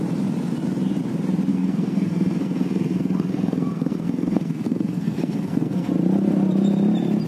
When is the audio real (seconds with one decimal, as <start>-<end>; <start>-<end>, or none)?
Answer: 0.0-1.5; 5.9-7.3